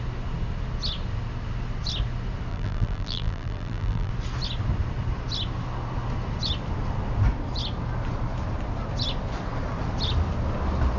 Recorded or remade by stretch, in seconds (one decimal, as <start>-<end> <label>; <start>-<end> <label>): 0.0-2.5 recorded; 2.5-4.1 remade; 4.1-11.0 recorded